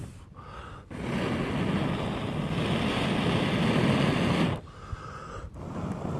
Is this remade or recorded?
recorded